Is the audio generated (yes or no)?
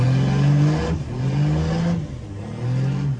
no